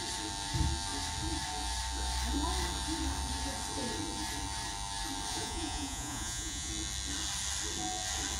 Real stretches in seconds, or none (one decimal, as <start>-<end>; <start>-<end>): 0.0-5.3; 6.7-8.4